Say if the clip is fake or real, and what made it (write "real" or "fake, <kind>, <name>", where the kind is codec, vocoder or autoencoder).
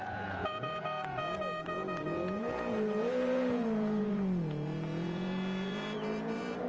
fake, vocoder, Vocos